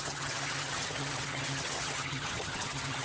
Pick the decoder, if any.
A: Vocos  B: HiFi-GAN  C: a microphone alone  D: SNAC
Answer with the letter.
B